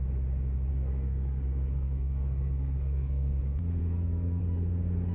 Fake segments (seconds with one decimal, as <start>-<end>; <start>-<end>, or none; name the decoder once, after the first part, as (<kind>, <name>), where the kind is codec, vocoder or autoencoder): 0.7-3.4 (codec, SNAC); 3.8-4.4